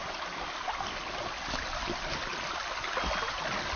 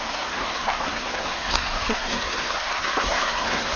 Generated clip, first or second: second